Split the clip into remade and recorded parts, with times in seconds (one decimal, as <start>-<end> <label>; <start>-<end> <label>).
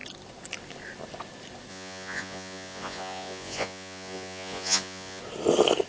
0.0-1.7 recorded; 1.7-5.2 remade; 5.2-5.9 recorded